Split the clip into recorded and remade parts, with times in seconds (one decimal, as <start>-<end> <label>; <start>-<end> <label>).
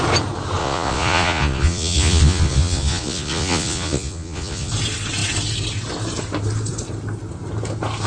0.0-0.6 recorded; 0.6-4.7 remade; 4.7-8.1 recorded